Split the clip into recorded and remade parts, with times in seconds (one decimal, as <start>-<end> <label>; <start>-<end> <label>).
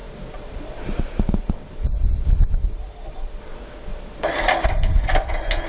0.0-3.4 remade; 3.4-3.9 recorded; 3.9-4.9 remade; 4.9-5.7 recorded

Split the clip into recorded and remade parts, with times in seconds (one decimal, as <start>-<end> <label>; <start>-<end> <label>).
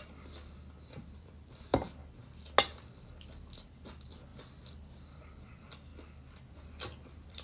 0.0-1.7 remade; 1.7-3.6 recorded; 3.6-5.9 remade; 5.9-6.5 recorded; 6.5-7.4 remade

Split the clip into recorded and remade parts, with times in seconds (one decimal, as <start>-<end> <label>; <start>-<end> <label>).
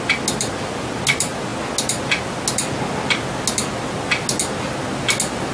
0.0-5.5 recorded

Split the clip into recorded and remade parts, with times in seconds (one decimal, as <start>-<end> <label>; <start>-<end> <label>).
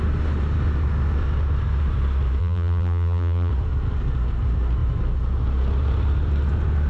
0.0-2.4 recorded; 2.4-3.5 remade; 3.5-6.9 recorded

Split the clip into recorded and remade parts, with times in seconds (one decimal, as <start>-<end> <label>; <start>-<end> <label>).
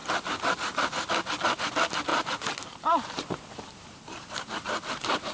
0.0-0.9 remade; 0.9-2.1 recorded; 2.1-5.3 remade